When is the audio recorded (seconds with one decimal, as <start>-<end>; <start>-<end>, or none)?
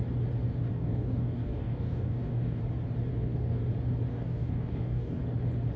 0.0-0.7; 2.6-3.1; 3.6-4.1; 5.2-5.8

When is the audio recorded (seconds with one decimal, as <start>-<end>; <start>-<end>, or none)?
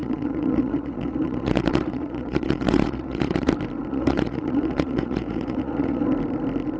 3.5-3.9; 6.0-6.8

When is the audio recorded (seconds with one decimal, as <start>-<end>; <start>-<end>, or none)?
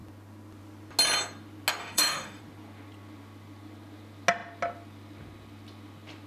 0.0-1.8; 2.4-6.3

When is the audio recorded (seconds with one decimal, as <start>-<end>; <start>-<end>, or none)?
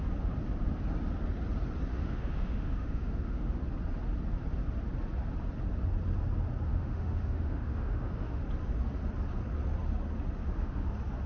0.0-1.9; 3.6-6.7; 8.4-10.4; 10.9-11.3